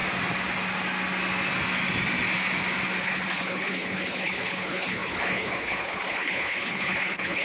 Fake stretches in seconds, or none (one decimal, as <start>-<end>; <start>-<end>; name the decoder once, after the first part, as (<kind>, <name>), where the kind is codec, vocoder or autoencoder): 3.0-7.4 (codec, HILCodec)